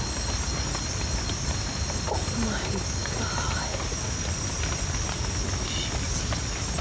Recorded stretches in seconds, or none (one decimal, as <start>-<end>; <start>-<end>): 0.0-6.8